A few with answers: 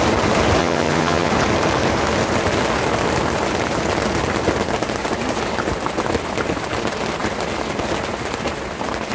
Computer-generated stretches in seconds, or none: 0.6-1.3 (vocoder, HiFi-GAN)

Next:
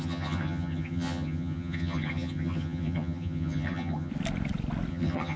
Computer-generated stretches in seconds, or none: 0.0-4.1 (vocoder, HiFi-GAN); 4.9-5.4

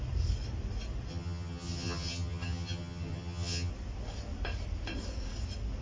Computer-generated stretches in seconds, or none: 1.1-3.7 (vocoder, HiFi-GAN)